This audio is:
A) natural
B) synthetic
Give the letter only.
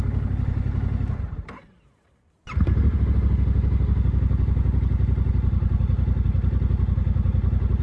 A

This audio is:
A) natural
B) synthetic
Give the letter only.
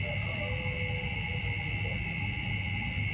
A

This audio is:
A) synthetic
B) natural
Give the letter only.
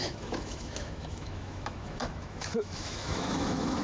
A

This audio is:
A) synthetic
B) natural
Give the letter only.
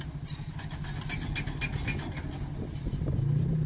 B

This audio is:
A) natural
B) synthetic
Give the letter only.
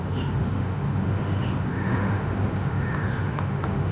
B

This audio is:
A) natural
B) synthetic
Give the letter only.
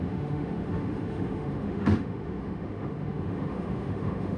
B